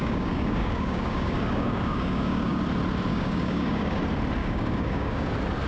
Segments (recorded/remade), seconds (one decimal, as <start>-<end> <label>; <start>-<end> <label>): 0.0-2.6 remade; 2.6-3.1 recorded; 3.1-4.0 remade; 4.0-4.4 recorded; 4.4-5.3 remade; 5.3-5.7 recorded